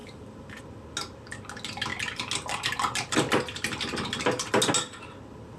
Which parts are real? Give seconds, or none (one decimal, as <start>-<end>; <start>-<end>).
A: 0.6-5.6